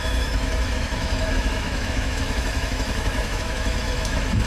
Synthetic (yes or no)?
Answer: yes